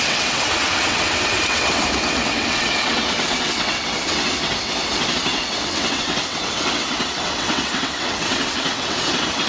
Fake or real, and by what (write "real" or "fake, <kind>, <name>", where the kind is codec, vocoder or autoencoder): fake, vocoder, WaveNeXt